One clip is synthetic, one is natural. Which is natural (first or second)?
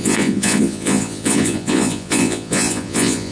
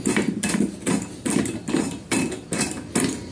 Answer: second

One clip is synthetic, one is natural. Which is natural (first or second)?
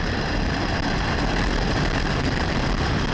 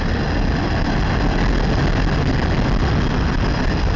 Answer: second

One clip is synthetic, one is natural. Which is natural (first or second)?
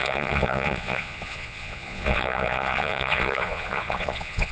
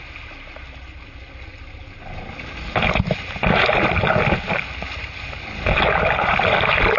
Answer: second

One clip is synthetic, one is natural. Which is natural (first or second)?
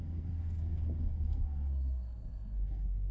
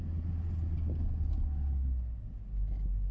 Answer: second